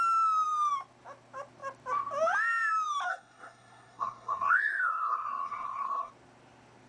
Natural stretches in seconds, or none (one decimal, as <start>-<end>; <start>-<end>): 0.0-3.1; 6.1-6.9